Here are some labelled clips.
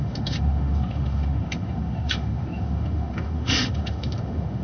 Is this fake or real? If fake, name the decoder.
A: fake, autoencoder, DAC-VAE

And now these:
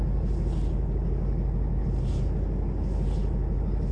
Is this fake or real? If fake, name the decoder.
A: real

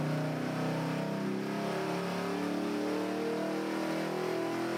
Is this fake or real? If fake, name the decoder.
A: real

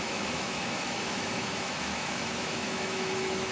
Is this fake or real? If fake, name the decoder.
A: fake, autoencoder, DAC-VAE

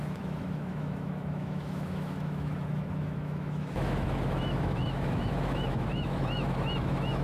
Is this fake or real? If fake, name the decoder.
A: fake, autoencoder, DAC-VAE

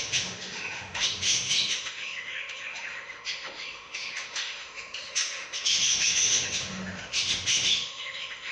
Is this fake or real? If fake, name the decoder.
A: fake, autoencoder, DAC-VAE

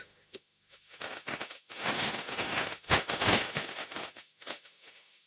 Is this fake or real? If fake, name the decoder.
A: fake, autoencoder, DAC-VAE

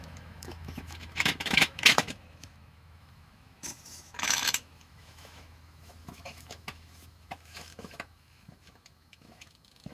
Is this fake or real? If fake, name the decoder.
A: fake, autoencoder, DAC-VAE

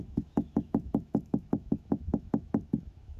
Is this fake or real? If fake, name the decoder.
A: fake, autoencoder, DAC-VAE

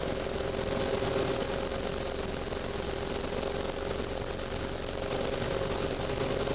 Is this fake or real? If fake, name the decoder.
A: real